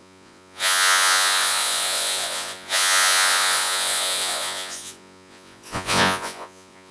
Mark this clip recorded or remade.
remade